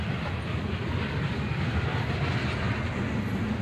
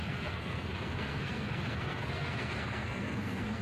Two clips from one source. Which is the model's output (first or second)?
second